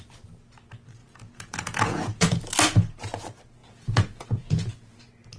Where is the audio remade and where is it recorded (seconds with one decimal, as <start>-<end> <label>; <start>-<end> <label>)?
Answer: 0.0-1.0 recorded; 1.0-2.4 remade; 2.4-3.6 recorded; 3.6-5.0 remade; 5.0-5.4 recorded